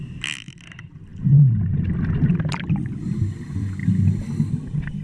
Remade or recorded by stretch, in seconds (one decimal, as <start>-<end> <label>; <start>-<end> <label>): 0.0-5.0 recorded